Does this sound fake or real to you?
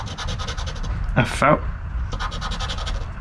real